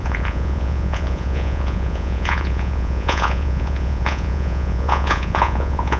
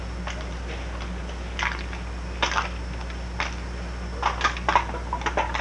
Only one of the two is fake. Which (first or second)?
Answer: first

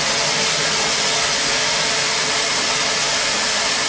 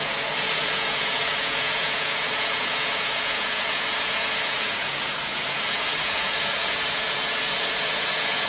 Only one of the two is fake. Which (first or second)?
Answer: second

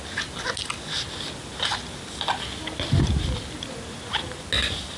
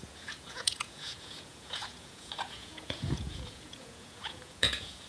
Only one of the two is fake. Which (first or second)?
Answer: second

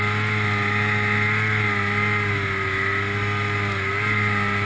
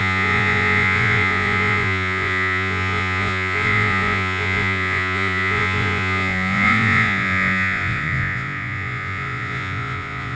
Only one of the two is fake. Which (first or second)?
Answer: second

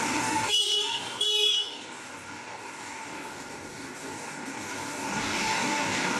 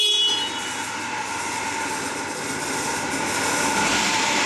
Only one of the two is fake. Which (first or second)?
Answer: first